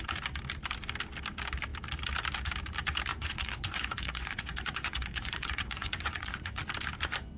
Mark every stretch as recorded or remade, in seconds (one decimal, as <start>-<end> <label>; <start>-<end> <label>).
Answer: 0.0-3.1 recorded; 3.1-6.6 remade; 6.6-7.4 recorded